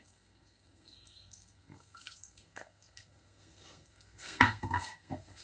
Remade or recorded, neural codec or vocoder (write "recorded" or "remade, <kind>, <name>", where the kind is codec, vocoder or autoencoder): remade, codec, SNAC